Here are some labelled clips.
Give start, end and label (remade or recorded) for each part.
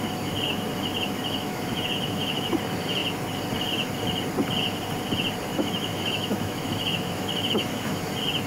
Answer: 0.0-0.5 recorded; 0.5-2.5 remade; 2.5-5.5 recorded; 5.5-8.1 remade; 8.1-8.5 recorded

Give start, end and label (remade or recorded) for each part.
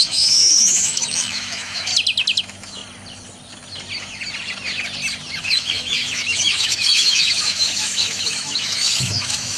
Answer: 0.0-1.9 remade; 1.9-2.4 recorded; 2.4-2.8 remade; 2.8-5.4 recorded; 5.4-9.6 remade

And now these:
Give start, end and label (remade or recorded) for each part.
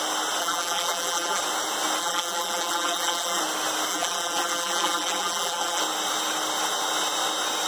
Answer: 0.0-0.4 recorded; 0.4-1.4 remade; 1.4-2.0 recorded; 2.0-3.4 remade; 3.4-3.9 recorded; 3.9-5.8 remade; 5.8-7.7 recorded